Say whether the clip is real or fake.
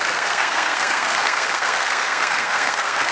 fake